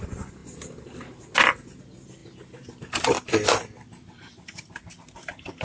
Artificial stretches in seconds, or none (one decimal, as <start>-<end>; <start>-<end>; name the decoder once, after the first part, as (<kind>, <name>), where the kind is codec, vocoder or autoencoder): none